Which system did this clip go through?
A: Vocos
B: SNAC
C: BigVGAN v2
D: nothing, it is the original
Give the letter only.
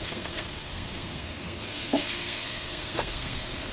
B